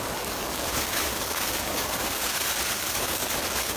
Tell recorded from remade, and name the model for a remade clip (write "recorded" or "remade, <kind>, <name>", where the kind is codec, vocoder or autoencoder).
remade, codec, DAC